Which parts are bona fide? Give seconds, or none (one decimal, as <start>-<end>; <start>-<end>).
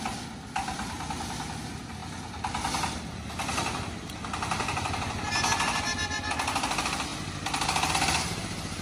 0.0-8.8